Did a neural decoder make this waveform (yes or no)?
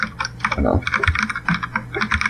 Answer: no